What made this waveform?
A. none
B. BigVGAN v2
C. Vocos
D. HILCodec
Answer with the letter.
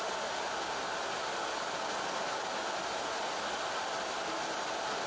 A